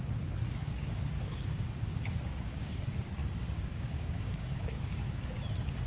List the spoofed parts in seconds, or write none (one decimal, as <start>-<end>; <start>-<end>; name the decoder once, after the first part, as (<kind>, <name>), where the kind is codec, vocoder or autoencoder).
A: 0.6-2.8 (codec, DAC); 3.2-5.4